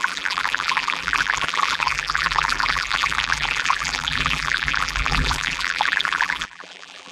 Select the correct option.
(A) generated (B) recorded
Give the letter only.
A